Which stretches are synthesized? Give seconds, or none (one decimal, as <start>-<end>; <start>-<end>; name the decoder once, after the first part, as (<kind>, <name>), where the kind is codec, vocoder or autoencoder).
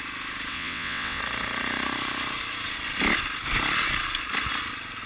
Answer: 0.5-1.2 (vocoder, WaveNeXt)